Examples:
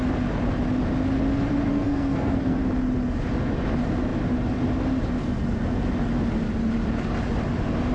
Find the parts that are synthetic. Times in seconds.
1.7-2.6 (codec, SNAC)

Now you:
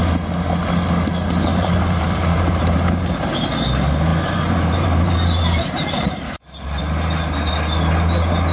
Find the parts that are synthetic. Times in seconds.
1.5-3.3 (vocoder, BigVGAN v2); 4.1-6.8

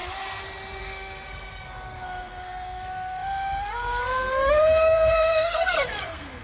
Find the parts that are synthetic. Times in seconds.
0.8-6.4 (codec, SNAC)

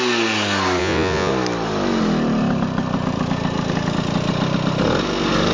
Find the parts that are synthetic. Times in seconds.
0.8-1.3 (vocoder, Vocos)

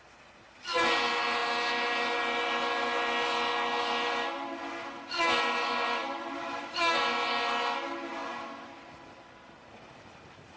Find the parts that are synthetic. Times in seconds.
6.0-6.8 (vocoder, BigVGAN v2)

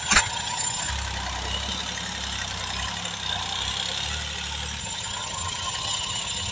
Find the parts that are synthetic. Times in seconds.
0.0-0.9 (vocoder, HiFi-GAN); 4.8-6.5

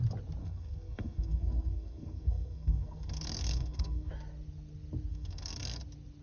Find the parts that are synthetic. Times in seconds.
0.4-4.1 (codec, SNAC); 5.1-5.8

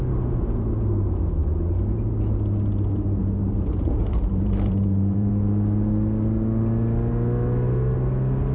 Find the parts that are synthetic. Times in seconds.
3.4-5.3 (vocoder, BigVGAN v2)